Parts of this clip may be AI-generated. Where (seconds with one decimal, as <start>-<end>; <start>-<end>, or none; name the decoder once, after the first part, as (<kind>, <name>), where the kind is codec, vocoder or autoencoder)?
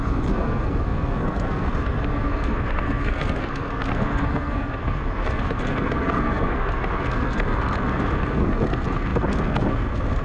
0.0-10.2 (codec, SNAC)